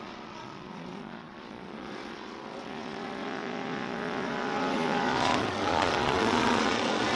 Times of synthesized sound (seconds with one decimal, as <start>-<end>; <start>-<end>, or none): 0.0-7.2